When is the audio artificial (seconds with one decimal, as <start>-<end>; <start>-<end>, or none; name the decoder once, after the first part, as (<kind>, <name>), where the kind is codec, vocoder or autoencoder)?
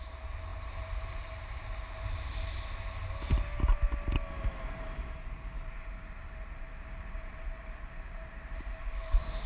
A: none